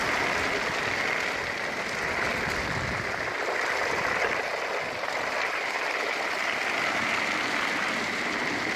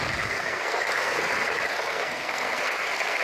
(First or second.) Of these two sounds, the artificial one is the second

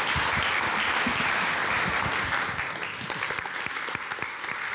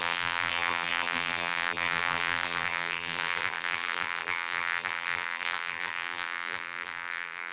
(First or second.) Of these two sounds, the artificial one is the second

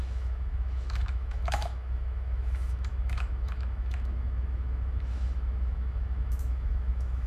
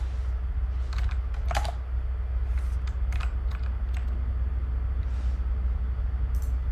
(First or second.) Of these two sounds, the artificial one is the first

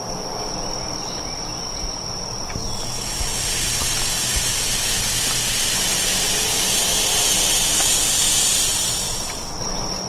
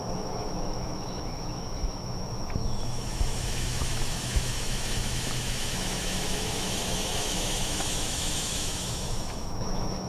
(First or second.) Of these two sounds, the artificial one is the second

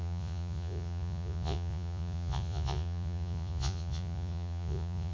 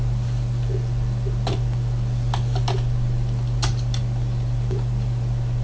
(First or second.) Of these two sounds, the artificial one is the first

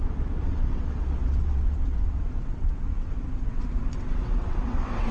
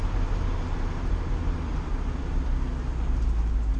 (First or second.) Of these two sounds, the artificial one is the first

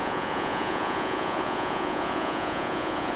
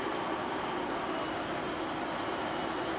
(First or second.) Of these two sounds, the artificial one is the first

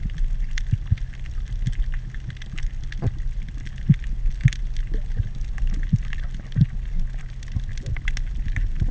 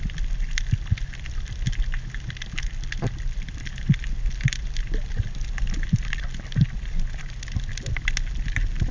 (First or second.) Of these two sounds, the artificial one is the second